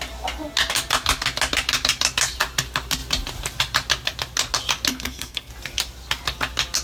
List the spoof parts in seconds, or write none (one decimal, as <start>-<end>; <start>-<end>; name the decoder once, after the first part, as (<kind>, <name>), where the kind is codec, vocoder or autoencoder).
4.9-5.5 (codec, SNAC)